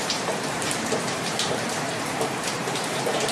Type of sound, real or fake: fake